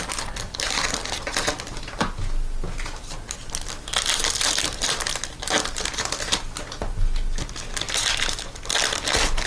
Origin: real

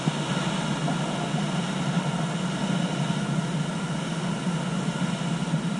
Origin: real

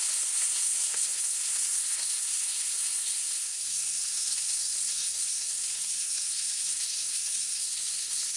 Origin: fake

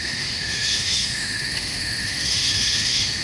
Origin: fake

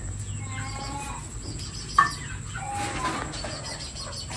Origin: real